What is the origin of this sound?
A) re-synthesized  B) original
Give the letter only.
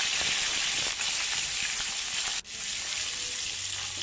B